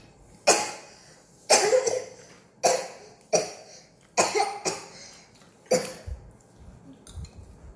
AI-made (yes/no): no